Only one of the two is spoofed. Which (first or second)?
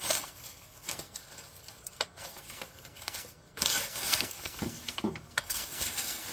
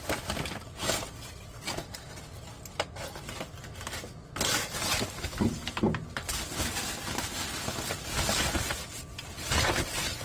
first